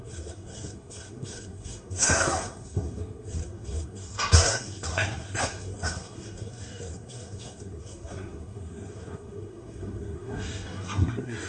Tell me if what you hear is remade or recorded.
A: remade